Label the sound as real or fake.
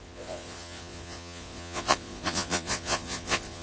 fake